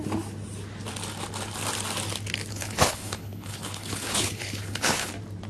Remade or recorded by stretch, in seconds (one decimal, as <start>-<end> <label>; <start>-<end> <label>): 0.0-2.5 recorded; 2.5-5.1 remade; 5.1-5.5 recorded

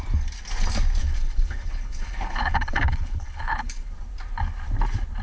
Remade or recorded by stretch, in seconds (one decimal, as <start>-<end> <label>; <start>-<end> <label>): 0.0-1.0 recorded; 1.0-3.9 remade; 3.9-5.2 recorded

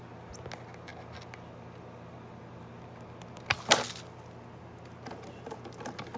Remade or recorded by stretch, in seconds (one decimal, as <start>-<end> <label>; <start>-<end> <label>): 0.0-6.2 recorded

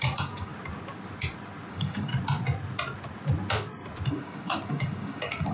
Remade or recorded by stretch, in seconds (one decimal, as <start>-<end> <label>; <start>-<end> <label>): 0.0-0.5 remade; 0.5-1.7 recorded; 1.7-2.1 remade; 2.1-4.1 recorded; 4.1-5.5 remade

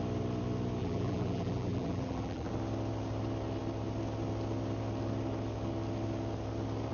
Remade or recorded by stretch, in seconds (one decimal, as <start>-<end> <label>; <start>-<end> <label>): 0.0-0.8 recorded; 0.8-2.5 remade; 2.5-6.9 recorded

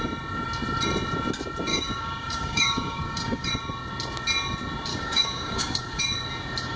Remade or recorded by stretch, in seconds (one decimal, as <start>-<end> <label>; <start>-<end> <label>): 0.0-1.7 recorded; 1.7-3.5 remade; 3.5-4.9 recorded; 4.9-6.0 remade; 6.0-6.8 recorded